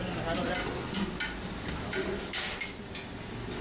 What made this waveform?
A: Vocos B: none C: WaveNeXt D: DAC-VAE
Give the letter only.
B